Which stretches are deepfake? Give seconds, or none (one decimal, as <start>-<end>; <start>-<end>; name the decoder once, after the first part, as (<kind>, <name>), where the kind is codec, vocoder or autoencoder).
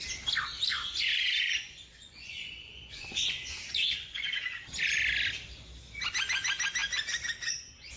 0.7-4.7 (vocoder, Vocos); 6.8-8.0